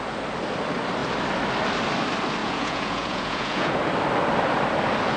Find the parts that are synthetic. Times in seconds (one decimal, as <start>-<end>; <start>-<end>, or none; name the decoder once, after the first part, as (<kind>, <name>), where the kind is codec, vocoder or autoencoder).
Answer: 2.4-3.8 (vocoder, Vocos)